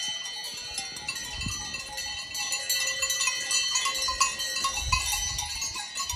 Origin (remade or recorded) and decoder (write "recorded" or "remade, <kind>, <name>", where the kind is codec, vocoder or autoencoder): recorded